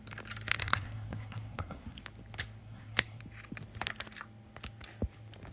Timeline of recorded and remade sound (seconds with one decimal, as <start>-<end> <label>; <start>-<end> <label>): 0.0-0.6 recorded; 0.6-2.0 remade; 2.0-2.6 recorded; 2.6-3.2 remade; 3.2-5.5 recorded